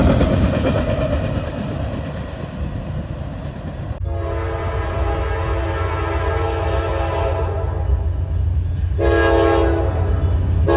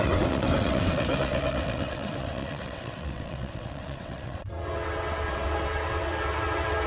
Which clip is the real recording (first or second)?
first